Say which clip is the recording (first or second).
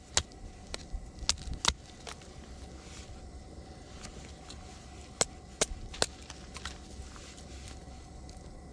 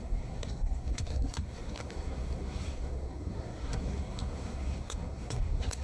first